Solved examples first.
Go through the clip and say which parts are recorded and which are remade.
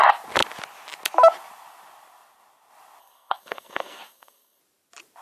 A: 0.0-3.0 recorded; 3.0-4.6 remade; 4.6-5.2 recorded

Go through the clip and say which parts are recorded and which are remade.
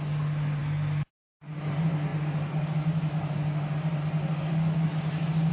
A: 0.0-5.5 recorded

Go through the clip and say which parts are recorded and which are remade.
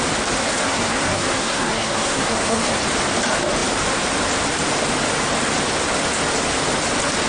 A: 0.0-0.4 recorded; 0.4-2.8 remade; 2.8-7.3 recorded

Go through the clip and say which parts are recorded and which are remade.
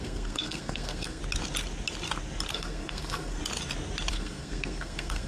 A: 0.0-1.2 remade; 1.2-2.5 recorded; 2.5-3.4 remade; 3.4-4.1 recorded; 4.1-5.3 remade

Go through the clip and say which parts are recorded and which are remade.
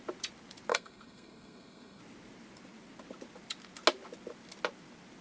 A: 0.0-0.7 recorded; 0.7-2.0 remade; 2.0-5.2 recorded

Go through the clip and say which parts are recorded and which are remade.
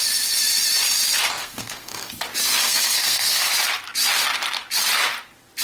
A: 0.0-1.4 recorded; 1.4-2.1 remade; 2.1-2.6 recorded; 2.6-3.5 remade; 3.5-5.6 recorded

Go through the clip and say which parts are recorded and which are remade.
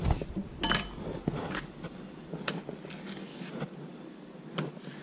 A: 0.0-5.0 recorded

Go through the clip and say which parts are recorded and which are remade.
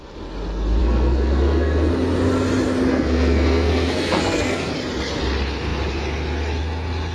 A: 0.0-0.8 recorded; 0.8-1.9 remade; 1.9-2.9 recorded; 2.9-4.7 remade; 4.7-7.1 recorded